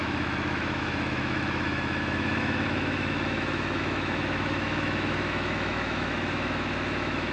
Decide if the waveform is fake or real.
fake